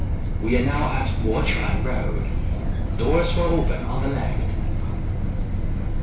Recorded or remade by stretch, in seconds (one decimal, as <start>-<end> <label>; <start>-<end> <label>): 0.0-6.0 recorded